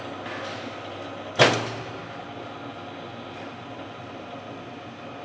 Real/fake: real